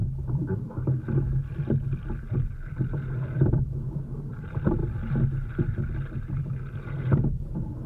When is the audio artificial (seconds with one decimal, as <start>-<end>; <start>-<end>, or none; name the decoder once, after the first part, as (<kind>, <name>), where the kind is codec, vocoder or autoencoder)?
3.5-4.8 (vocoder, BigVGAN v2); 6.3-7.9

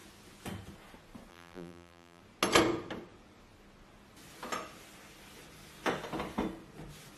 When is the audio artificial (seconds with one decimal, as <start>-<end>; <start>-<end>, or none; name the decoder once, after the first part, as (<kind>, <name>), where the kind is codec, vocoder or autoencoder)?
1.3-2.2 (vocoder, BigVGAN v2)

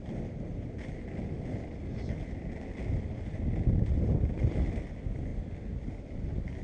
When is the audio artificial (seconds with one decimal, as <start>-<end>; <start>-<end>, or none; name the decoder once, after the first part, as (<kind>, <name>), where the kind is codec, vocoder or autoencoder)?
1.9-4.8 (vocoder, BigVGAN v2)

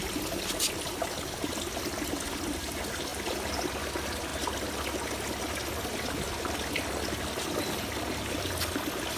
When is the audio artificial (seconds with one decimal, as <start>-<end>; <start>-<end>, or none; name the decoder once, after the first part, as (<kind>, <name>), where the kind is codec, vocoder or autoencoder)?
3.1-3.6 (vocoder, BigVGAN v2)

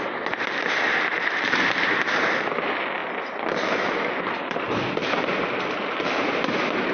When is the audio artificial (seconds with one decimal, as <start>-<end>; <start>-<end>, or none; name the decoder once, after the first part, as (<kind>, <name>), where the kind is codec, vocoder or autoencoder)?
none

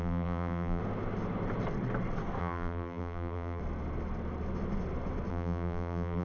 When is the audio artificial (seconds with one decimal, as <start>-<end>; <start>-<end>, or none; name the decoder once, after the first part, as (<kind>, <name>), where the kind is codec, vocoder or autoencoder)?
0.0-0.8 (vocoder, BigVGAN v2); 2.4-3.6; 5.3-6.2

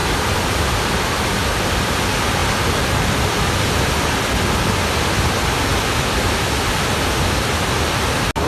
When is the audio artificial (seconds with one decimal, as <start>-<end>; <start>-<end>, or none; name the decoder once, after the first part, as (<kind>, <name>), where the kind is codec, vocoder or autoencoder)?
0.0-1.9 (vocoder, BigVGAN v2)

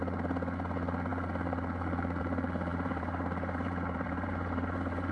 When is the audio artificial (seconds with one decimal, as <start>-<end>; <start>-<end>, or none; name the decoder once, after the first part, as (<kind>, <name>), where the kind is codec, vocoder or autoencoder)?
2.7-5.1 (vocoder, BigVGAN v2)